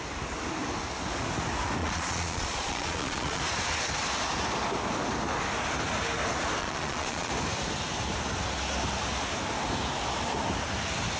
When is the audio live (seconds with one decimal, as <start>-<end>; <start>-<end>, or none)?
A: 0.0-1.8; 3.4-6.6; 7.3-11.2